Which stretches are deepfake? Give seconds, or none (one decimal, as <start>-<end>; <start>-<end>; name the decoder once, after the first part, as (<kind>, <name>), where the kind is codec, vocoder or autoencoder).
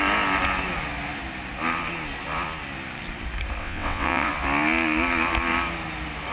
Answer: 3.6-4.3 (vocoder, WaveNeXt)